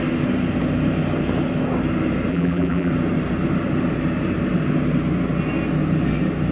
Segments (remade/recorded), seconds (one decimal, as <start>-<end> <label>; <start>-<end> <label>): 0.0-2.3 recorded; 2.3-2.9 remade; 2.9-6.5 recorded